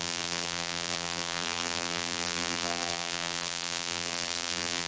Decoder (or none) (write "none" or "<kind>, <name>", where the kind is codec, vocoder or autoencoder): vocoder, BigVGAN v2